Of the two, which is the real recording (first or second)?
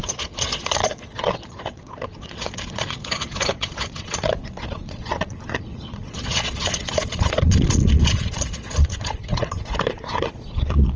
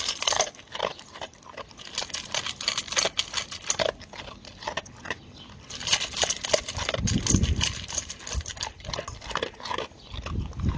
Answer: second